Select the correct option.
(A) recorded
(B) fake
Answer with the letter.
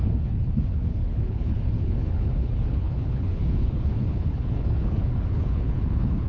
B